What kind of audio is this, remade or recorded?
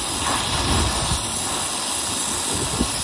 recorded